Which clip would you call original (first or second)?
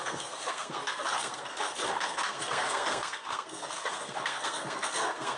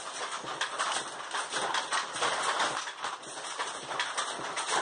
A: second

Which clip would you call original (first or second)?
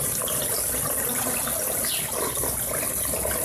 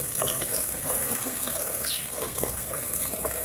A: first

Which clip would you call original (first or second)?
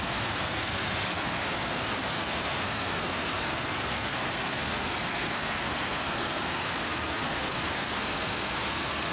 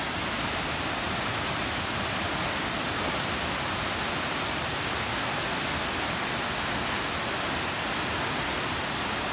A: second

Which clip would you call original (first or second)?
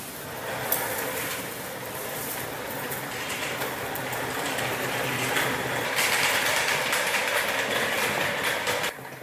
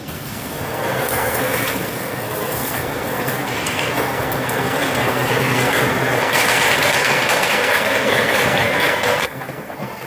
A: first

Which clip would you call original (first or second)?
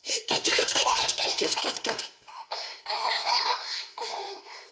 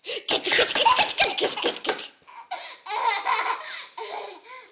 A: second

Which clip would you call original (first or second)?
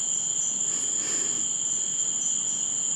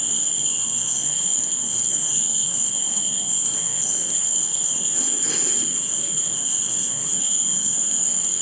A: first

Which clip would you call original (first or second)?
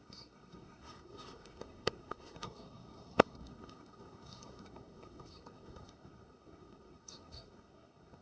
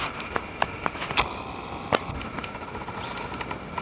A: second